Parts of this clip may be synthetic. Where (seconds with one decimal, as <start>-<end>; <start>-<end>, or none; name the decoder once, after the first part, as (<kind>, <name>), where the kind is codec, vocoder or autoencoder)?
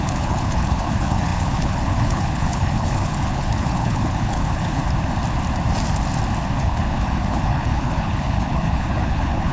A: 0.0-4.8 (codec, HILCodec); 6.6-9.5